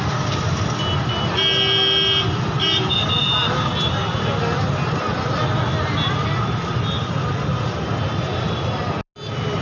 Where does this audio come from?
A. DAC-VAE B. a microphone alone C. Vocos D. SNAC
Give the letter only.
B